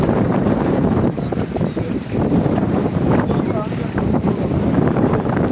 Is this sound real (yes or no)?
no